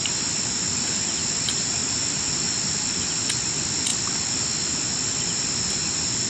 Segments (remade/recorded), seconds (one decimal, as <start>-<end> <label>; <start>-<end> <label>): 0.0-6.3 recorded

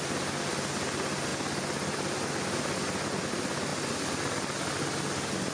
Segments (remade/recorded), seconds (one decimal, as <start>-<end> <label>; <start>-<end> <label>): 0.0-5.5 recorded

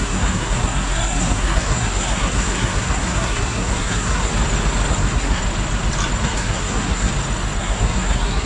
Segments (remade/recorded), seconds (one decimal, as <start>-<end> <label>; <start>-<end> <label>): 0.0-4.3 remade; 4.3-4.9 recorded; 4.9-5.4 remade; 5.4-6.2 recorded; 6.2-7.1 remade; 7.1-7.6 recorded; 7.6-8.5 remade

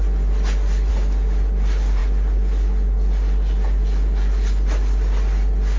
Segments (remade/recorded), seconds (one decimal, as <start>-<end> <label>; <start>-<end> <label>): 0.0-5.8 recorded

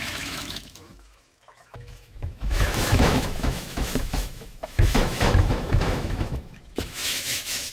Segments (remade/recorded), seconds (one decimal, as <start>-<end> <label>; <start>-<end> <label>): 0.0-7.7 remade

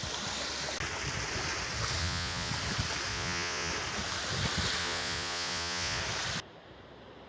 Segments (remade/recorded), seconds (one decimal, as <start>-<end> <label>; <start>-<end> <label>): 0.0-2.0 recorded; 2.0-2.5 remade; 2.5-3.1 recorded; 3.1-3.7 remade; 3.7-4.8 recorded; 4.8-6.0 remade; 6.0-7.3 recorded

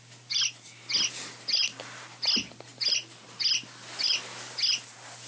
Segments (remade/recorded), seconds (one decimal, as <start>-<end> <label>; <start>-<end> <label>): 0.0-5.3 recorded

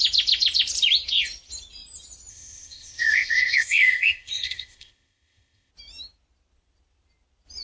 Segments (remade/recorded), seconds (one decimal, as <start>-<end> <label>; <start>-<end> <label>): 0.0-2.3 recorded; 2.3-5.7 remade; 5.7-7.6 recorded